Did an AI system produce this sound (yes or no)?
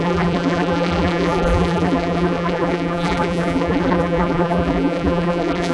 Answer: yes